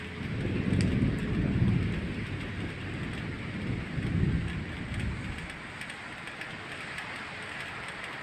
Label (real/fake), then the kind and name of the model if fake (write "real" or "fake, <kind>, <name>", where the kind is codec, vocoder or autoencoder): real